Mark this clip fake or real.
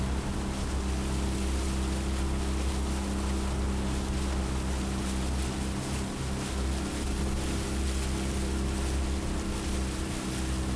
real